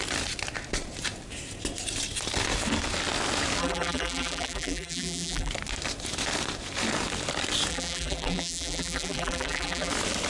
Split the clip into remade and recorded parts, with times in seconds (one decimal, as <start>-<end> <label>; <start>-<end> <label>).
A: 0.0-3.6 recorded; 3.6-5.5 remade; 5.5-7.7 recorded; 7.7-9.9 remade; 9.9-10.3 recorded